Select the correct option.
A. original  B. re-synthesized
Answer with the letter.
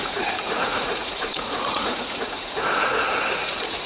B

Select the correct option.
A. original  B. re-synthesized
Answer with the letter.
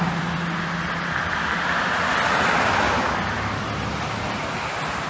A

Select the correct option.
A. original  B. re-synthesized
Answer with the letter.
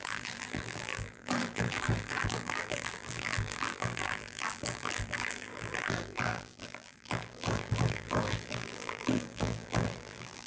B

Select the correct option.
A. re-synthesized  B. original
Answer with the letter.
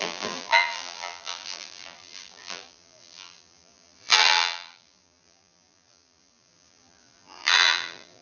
A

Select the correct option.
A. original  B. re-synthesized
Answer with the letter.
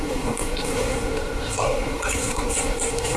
B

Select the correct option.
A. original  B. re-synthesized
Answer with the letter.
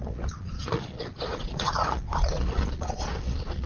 B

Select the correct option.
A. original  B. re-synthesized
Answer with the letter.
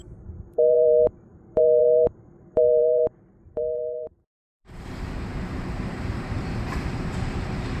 B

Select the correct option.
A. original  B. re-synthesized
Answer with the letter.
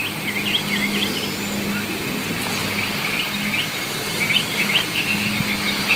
A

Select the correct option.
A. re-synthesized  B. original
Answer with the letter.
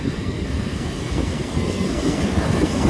A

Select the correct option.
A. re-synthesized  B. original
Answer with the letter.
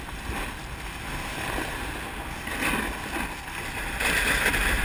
B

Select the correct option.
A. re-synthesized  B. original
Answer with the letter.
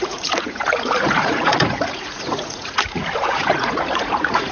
A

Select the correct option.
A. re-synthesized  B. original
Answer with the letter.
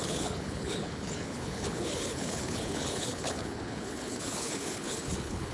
A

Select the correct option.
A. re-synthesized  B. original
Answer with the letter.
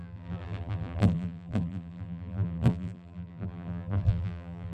A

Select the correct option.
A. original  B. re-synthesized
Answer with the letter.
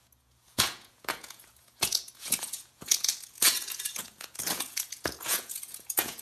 B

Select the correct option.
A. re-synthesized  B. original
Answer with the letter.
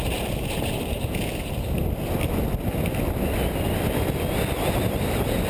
B